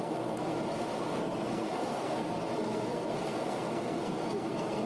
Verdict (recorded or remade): remade